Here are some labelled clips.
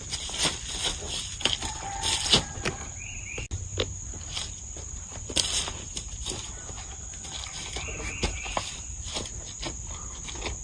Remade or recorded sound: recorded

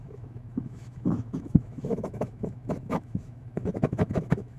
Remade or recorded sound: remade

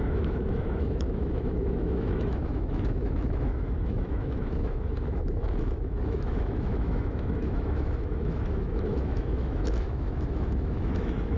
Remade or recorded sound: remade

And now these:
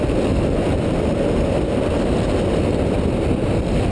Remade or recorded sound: recorded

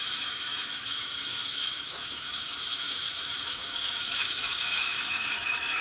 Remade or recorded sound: remade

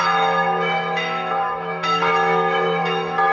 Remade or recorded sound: remade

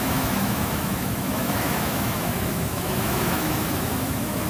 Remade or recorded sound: remade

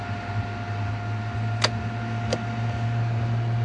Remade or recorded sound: recorded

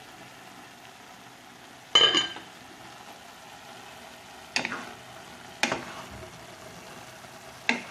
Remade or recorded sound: recorded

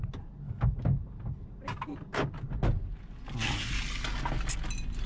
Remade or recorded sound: recorded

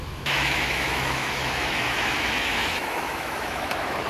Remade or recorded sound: remade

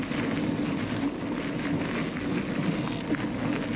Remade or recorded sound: recorded